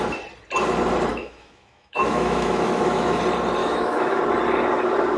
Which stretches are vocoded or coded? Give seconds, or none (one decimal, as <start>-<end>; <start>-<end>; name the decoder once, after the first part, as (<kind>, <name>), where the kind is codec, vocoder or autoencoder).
1.1-3.2 (autoencoder, DAC-VAE); 3.6-4.2